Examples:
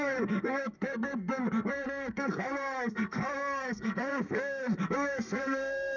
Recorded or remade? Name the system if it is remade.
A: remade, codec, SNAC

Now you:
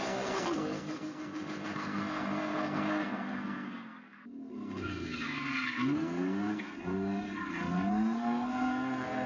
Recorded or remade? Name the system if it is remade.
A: remade, codec, SNAC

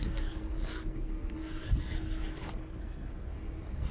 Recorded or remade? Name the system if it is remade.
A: remade, codec, SNAC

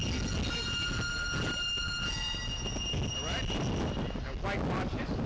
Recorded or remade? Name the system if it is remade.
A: recorded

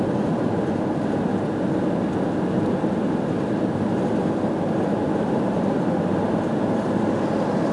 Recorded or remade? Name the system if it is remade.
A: recorded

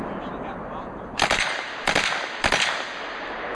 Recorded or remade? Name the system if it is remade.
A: recorded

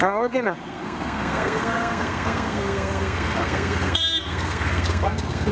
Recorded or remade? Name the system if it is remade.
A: remade, codec, SNAC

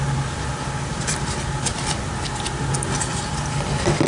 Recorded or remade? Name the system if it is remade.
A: recorded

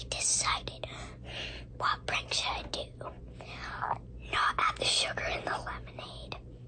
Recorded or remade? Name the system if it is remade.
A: recorded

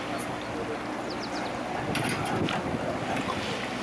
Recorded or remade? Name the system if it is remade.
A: recorded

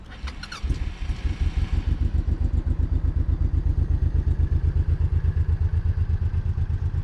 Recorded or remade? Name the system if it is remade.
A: recorded